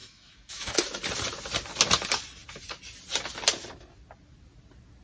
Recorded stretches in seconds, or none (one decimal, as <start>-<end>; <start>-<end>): 0.7-5.0